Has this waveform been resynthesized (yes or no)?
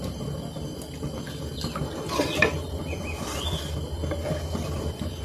yes